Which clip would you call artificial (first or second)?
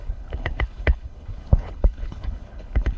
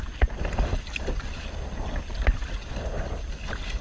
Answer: first